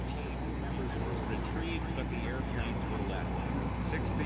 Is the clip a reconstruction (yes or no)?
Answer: no